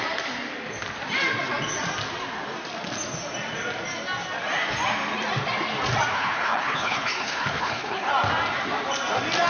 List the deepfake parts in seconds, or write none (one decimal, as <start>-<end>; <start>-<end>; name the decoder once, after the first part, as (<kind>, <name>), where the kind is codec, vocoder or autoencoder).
6.1-8.1 (codec, HILCodec)